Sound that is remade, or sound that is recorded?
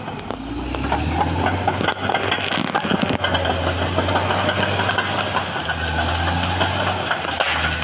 recorded